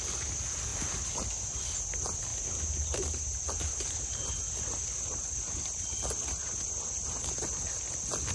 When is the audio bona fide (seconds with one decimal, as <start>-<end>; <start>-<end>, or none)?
0.0-8.3